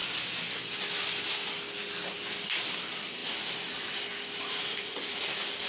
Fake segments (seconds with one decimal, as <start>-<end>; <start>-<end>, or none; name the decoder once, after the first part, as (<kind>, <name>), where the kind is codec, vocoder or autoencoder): none